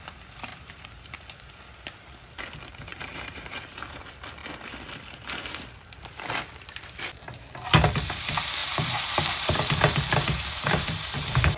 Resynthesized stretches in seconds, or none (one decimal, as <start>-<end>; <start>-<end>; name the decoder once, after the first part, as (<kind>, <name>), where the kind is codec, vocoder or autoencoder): 0.5-1.5 (vocoder, BigVGAN v2); 2.9-4.0; 8.6-11.6